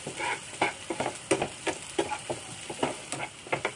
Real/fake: real